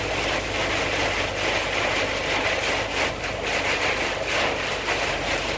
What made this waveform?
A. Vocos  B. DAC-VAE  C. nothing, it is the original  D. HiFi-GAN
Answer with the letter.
C